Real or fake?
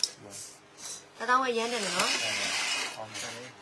real